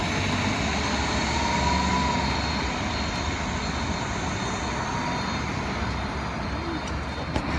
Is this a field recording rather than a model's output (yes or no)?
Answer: yes